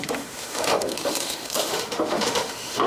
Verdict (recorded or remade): remade